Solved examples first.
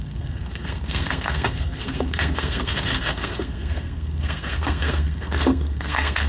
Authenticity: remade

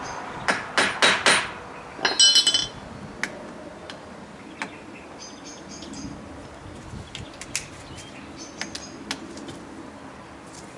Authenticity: recorded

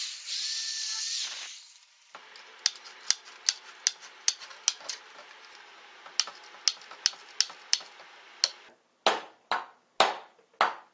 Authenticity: recorded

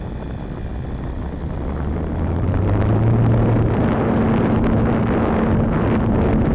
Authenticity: recorded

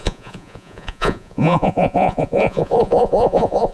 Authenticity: remade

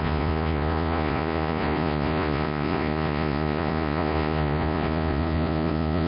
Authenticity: remade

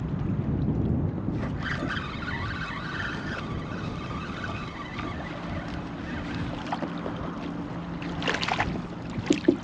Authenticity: recorded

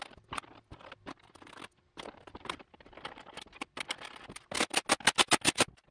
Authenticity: recorded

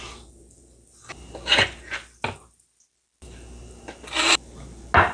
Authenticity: recorded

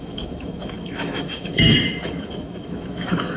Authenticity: remade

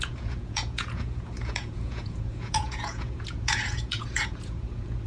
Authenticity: remade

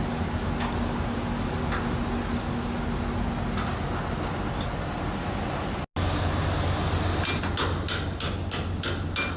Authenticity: recorded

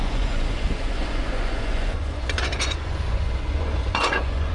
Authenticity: remade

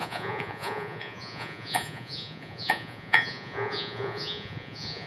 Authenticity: remade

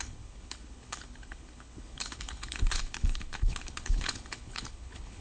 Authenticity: remade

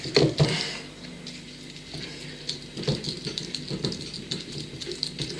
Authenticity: recorded